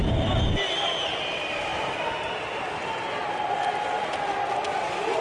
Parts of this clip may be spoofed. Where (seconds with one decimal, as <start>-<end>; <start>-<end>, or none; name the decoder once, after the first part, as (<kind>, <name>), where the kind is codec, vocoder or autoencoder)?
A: none